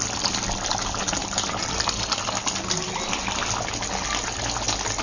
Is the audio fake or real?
real